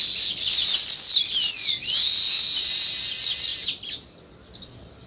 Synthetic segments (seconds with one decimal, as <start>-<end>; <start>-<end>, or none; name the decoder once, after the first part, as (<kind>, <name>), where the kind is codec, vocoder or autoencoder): 0.6-2.8 (vocoder, BigVGAN v2); 3.5-4.2